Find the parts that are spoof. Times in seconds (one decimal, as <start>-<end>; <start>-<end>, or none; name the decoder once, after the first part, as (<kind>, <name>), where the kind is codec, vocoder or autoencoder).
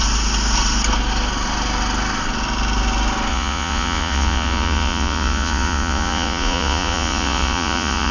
3.3-8.1 (vocoder, Vocos)